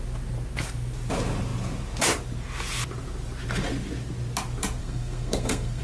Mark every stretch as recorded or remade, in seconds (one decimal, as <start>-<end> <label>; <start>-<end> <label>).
0.0-4.8 recorded; 4.8-5.8 remade

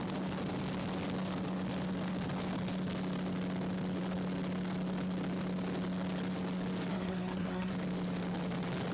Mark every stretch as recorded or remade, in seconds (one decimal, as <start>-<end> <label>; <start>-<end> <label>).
0.0-6.9 recorded; 6.9-7.7 remade; 7.7-8.9 recorded

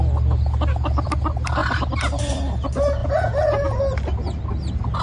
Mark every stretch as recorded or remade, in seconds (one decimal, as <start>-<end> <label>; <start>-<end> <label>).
0.0-3.0 recorded; 3.0-3.8 remade; 3.8-5.0 recorded

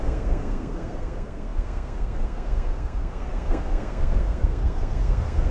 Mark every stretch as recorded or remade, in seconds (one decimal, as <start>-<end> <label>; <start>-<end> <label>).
0.0-5.5 remade